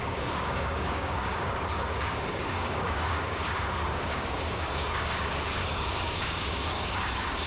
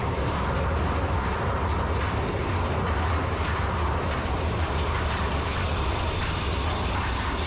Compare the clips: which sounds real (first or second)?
second